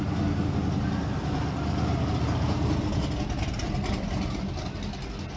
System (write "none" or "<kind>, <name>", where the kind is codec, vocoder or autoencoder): none